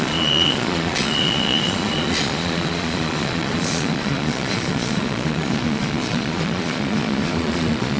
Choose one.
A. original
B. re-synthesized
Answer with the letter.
B